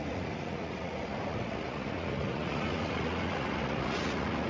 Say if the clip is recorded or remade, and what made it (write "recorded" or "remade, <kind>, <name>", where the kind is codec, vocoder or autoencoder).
remade, vocoder, Vocos